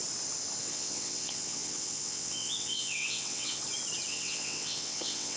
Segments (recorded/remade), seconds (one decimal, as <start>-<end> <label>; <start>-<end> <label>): 0.0-0.6 recorded; 0.6-3.6 remade; 3.6-4.1 recorded; 4.1-5.4 remade

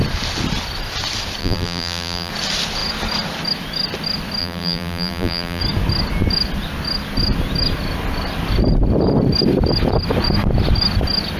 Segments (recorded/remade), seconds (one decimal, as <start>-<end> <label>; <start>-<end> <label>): 0.0-1.4 recorded; 1.4-2.3 remade; 2.3-4.4 recorded; 4.4-5.6 remade; 5.6-11.4 recorded